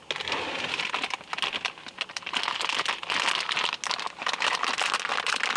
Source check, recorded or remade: recorded